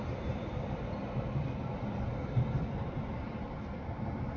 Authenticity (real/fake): real